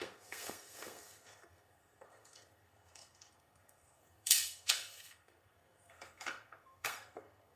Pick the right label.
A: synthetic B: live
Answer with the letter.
A